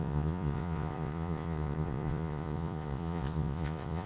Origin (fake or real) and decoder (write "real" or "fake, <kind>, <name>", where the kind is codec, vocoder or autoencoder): fake, vocoder, Vocos